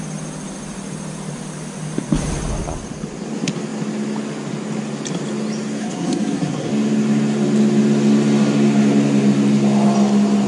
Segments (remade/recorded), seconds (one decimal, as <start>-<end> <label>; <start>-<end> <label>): 0.0-5.8 recorded; 5.8-6.7 remade; 6.7-10.5 recorded